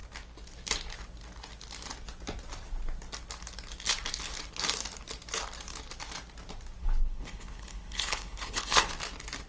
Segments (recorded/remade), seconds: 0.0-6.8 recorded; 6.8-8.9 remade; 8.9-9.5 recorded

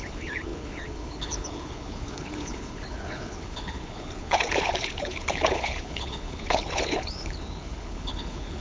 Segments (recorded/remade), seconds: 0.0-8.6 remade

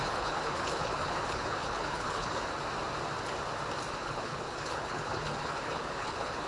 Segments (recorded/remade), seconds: 0.0-2.4 remade; 2.4-3.9 recorded; 3.9-6.5 remade

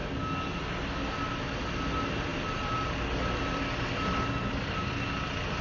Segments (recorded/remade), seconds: 0.0-5.6 recorded

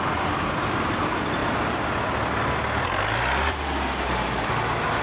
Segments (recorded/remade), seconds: 0.0-5.0 recorded